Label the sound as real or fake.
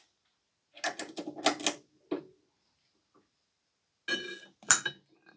real